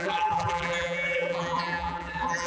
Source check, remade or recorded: remade